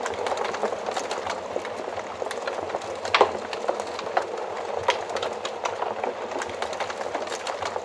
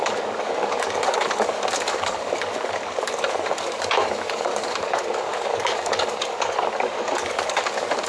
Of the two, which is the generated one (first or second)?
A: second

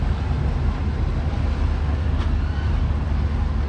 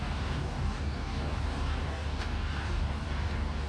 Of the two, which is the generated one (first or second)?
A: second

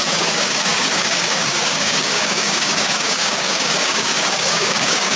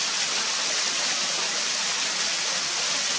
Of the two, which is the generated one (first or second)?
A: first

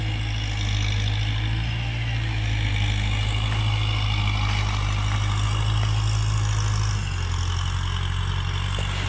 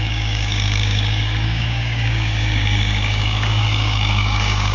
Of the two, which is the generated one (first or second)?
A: second